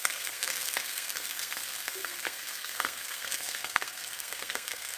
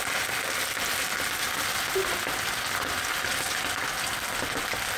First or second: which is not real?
first